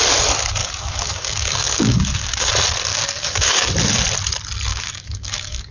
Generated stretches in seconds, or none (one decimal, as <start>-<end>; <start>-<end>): 0.6-2.5; 2.9-3.7; 4.7-5.7